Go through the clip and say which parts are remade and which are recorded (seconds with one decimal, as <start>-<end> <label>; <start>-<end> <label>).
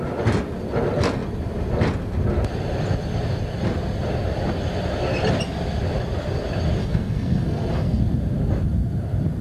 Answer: 0.0-6.8 recorded; 6.8-8.0 remade; 8.0-9.4 recorded